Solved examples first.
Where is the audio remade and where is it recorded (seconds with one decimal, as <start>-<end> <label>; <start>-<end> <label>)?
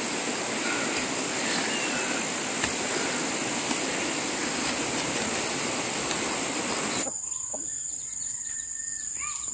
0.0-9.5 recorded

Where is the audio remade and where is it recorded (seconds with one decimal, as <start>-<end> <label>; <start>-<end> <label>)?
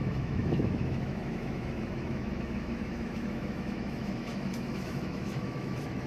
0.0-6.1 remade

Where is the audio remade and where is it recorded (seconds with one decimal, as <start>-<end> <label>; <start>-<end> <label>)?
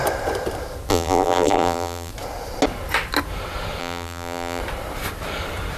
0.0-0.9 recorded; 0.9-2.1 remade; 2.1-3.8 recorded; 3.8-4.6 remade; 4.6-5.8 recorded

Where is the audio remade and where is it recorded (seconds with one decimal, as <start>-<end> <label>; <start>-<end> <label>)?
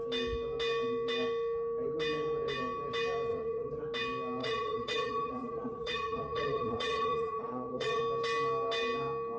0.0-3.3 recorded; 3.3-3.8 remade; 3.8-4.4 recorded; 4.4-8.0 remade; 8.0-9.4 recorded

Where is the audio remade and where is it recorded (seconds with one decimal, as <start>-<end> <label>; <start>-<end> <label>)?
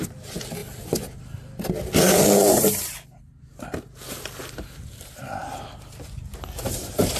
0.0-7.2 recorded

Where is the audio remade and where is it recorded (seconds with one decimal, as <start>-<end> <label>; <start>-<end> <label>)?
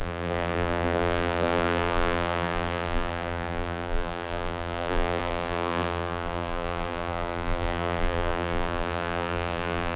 0.0-10.0 remade